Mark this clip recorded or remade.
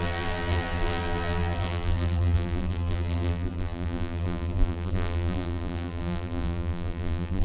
remade